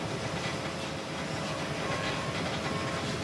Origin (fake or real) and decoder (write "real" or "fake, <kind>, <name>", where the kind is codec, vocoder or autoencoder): real